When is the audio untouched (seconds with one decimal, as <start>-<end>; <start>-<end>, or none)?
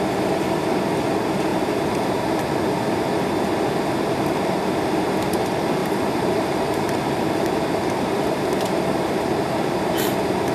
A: 0.0-1.5; 2.2-5.8